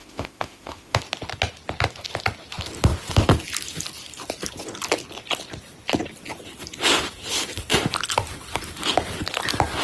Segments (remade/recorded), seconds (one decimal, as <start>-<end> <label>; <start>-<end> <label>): 0.0-1.0 remade; 1.0-9.8 recorded

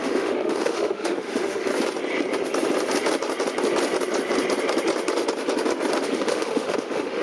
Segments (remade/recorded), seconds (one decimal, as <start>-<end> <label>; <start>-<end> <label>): 0.0-1.7 remade; 1.7-6.0 recorded; 6.0-7.2 remade

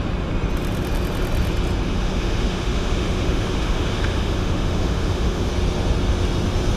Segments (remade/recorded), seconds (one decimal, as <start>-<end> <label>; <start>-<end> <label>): 0.0-1.8 recorded; 1.8-5.5 remade; 5.5-6.8 recorded